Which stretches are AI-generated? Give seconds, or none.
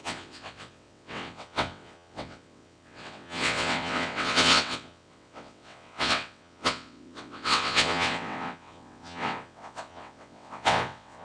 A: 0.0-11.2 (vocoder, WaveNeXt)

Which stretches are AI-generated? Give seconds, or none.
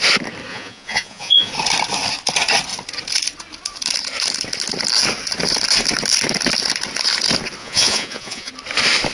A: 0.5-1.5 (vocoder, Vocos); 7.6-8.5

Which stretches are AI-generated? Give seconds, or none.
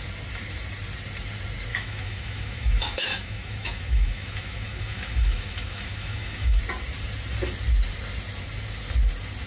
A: 1.7-6.6 (autoencoder, DAC-VAE)